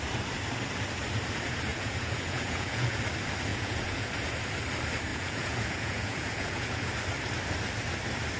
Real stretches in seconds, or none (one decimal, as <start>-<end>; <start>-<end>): 0.0-1.7; 3.0-3.5; 4.1-5.1; 6.9-8.4